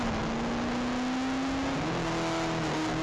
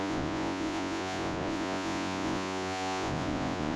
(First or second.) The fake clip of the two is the second